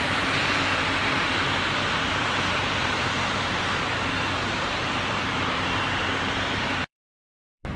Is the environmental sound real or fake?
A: fake